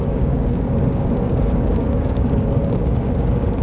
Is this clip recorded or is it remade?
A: remade